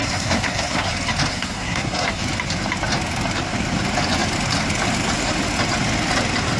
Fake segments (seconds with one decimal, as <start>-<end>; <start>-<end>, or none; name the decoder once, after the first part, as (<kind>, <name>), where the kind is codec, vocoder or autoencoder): 0.0-0.9 (codec, SNAC); 1.3-2.2